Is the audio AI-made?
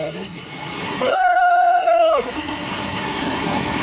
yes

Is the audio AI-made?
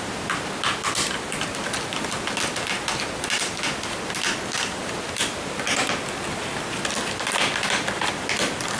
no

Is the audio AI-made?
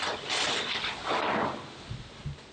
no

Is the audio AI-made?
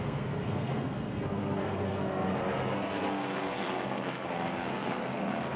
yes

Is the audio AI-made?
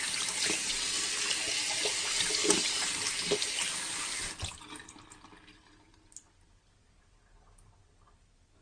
no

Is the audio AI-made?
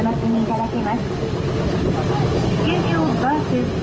no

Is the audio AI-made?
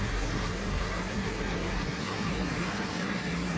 yes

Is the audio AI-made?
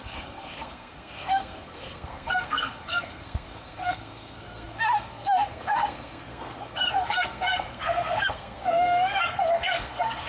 yes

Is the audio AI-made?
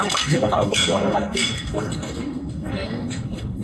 yes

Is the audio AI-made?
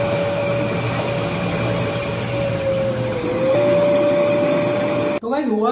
no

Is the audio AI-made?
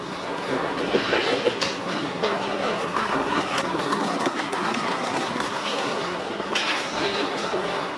yes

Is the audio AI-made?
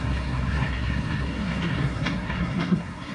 yes